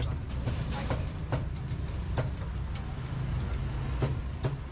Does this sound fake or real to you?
real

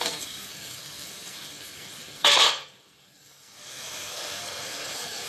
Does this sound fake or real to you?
fake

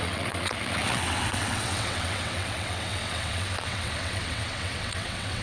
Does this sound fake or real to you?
fake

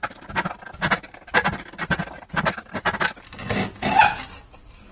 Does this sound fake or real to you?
real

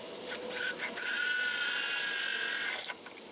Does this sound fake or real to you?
real